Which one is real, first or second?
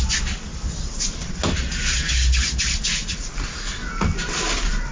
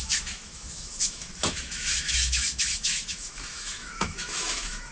first